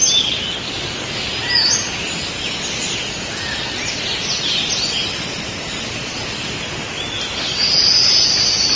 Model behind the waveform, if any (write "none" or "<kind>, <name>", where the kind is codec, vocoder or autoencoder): none